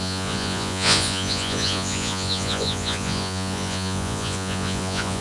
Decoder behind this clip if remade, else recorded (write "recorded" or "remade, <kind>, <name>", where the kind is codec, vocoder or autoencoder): remade, vocoder, Vocos